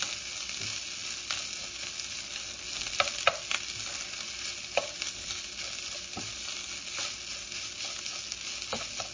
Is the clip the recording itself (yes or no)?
yes